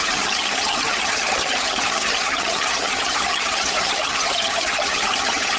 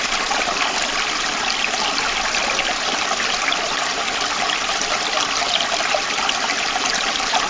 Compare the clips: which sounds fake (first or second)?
first